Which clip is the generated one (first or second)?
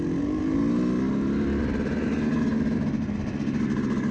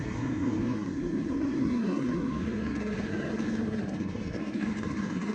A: second